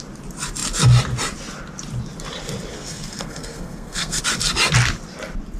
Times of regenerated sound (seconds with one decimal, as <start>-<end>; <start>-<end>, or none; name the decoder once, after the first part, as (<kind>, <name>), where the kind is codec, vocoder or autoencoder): 2.7-4.2 (codec, SNAC)

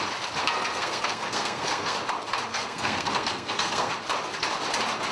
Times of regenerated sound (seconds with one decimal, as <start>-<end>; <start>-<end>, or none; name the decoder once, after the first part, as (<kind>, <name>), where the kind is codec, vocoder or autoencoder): 0.4-2.0 (codec, SNAC); 2.5-3.9

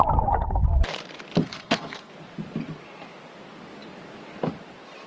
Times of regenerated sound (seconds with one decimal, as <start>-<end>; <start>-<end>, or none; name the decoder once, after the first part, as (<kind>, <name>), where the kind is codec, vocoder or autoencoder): 1.4-2.1 (codec, SNAC)

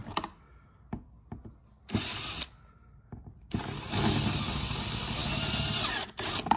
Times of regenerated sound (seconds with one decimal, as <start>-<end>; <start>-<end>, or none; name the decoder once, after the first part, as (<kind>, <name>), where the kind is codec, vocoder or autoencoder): none

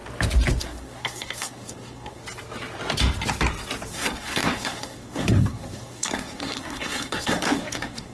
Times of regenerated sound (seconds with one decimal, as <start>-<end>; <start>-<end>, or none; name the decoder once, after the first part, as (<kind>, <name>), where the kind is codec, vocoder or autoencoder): 0.6-2.2 (codec, SNAC); 3.9-8.1

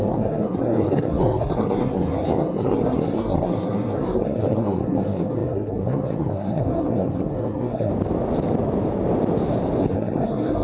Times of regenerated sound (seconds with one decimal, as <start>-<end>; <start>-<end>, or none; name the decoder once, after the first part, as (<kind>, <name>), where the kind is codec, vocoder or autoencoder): 0.0-7.9 (codec, SNAC); 9.8-10.6